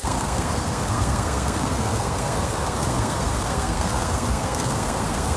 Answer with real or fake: fake